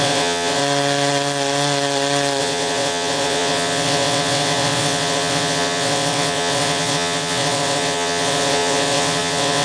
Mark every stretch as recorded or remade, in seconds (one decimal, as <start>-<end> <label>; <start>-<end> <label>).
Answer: 0.0-0.6 remade; 0.6-2.4 recorded; 2.4-9.6 remade